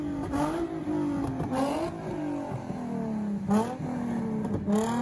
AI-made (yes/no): no